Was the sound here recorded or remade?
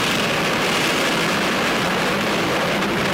remade